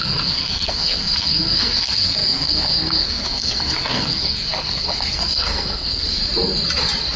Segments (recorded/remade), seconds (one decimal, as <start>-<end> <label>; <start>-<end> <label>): 0.0-6.2 remade; 6.2-7.2 recorded